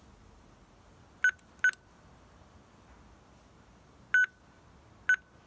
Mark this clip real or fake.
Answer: real